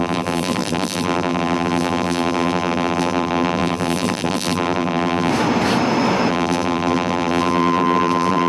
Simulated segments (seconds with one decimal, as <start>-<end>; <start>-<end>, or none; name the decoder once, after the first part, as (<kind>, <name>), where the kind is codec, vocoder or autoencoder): 0.0-5.3 (vocoder, BigVGAN v2); 6.3-8.5